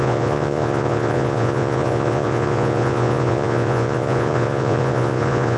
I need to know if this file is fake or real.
fake